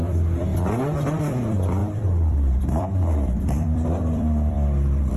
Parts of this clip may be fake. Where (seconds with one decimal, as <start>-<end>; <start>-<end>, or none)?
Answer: 0.0-0.5; 1.3-5.2